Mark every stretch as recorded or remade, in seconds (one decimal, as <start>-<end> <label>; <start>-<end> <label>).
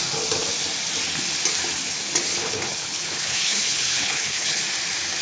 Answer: 0.0-2.4 recorded; 2.4-4.6 remade; 4.6-5.2 recorded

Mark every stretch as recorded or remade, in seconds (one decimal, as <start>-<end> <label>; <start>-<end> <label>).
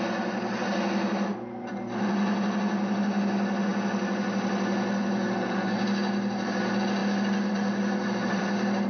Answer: 0.0-8.9 recorded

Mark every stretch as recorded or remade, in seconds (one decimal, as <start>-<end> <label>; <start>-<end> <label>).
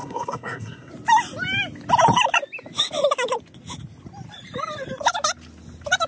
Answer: 0.0-0.9 remade; 0.9-6.1 recorded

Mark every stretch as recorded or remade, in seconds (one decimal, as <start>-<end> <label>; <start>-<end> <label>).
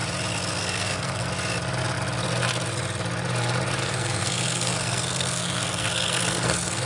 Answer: 0.0-0.5 recorded; 0.5-1.3 remade; 1.3-3.9 recorded; 3.9-6.9 remade